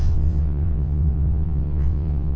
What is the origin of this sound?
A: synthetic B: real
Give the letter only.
A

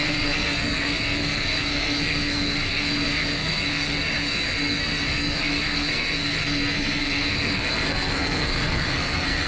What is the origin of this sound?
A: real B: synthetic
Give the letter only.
B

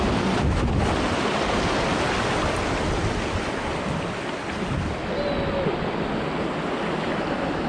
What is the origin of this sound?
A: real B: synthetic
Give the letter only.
A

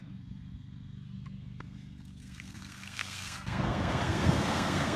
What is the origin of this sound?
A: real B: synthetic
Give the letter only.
B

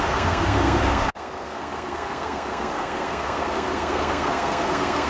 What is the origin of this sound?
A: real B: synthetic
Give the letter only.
B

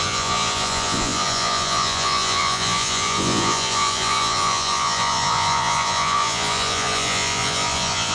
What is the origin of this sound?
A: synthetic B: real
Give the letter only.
A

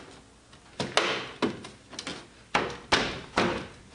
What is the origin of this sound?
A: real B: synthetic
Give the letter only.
A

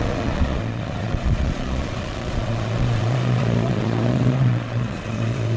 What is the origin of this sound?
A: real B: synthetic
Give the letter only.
B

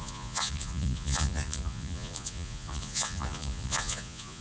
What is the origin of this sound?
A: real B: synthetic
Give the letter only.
B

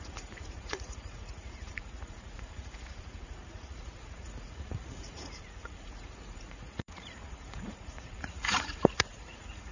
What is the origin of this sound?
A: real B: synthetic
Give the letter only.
B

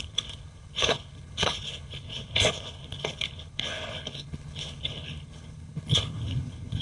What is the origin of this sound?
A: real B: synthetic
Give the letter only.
B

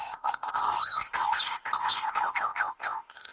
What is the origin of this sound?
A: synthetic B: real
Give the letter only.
A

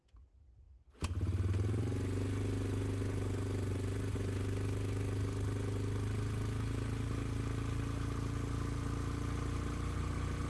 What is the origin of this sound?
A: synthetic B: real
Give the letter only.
B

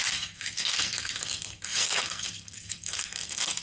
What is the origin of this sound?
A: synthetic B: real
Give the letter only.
A